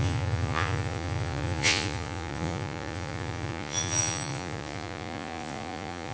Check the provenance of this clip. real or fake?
fake